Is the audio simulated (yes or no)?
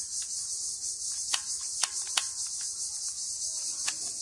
no